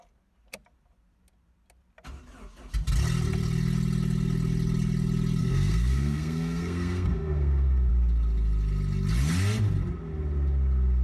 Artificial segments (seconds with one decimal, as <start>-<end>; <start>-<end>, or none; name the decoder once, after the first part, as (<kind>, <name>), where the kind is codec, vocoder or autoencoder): 5.4-7.9 (codec, SNAC)